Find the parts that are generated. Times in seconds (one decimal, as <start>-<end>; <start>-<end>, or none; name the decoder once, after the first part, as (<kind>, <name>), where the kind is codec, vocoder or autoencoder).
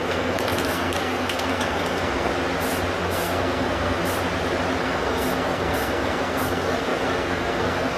0.0-2.3 (codec, SNAC); 3.0-4.0; 4.8-8.0